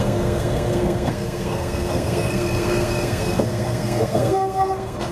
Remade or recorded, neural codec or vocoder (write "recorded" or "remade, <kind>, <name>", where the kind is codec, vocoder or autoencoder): remade, codec, SNAC